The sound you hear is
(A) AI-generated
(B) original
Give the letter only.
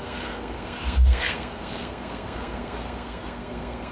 A